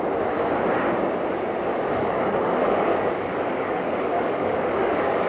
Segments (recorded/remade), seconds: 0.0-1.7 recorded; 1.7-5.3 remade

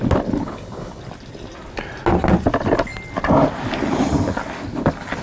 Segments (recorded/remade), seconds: 0.0-0.4 recorded; 0.4-1.0 remade; 1.0-5.2 recorded

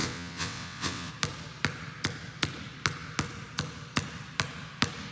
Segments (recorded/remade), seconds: 0.0-1.1 remade; 1.1-5.1 recorded

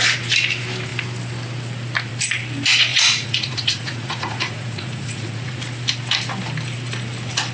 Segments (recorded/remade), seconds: 0.0-2.9 recorded; 2.9-5.6 remade; 5.6-7.5 recorded

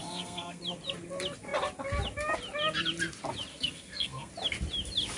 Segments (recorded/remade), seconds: 0.0-0.6 remade; 0.6-3.5 recorded; 3.5-4.3 remade; 4.3-5.2 recorded

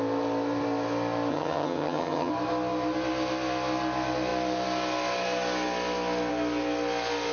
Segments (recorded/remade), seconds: 0.0-1.3 recorded; 1.3-2.3 remade; 2.3-7.3 recorded

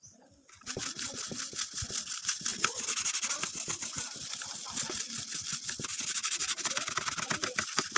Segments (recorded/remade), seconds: 0.0-8.0 recorded

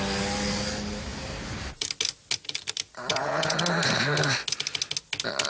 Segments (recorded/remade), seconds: 0.0-3.1 recorded; 3.1-3.6 remade; 3.6-5.5 recorded